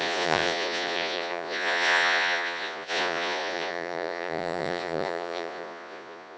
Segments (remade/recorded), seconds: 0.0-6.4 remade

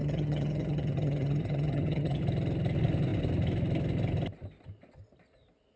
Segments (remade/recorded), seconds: 0.0-2.2 remade; 2.2-5.8 recorded

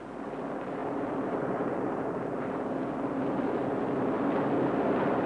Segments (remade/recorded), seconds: 0.0-5.3 recorded